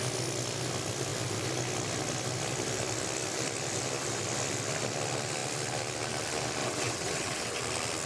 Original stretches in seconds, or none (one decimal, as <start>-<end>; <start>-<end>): 0.0-6.6; 7.6-8.1

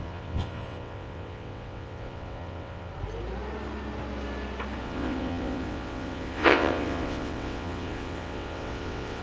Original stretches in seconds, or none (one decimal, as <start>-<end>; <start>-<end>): 2.9-4.8

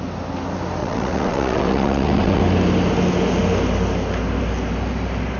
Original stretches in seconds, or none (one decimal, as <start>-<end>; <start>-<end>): 0.0-0.8; 2.4-5.4

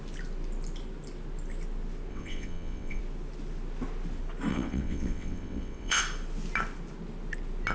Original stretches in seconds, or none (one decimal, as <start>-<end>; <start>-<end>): 0.0-2.1; 3.0-4.5; 6.0-7.7

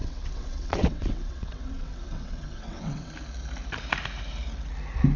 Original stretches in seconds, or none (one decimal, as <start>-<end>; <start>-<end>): 3.1-5.2

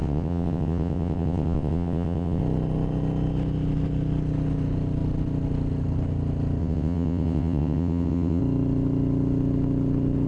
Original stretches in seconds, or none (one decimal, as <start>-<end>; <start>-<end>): 2.4-6.6; 8.4-10.3